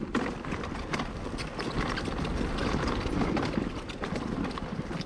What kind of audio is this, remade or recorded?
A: recorded